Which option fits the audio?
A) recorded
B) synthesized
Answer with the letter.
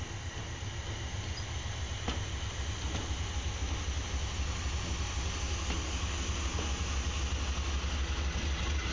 A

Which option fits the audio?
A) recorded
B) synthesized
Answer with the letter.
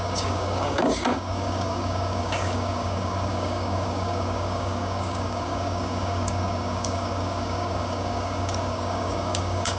B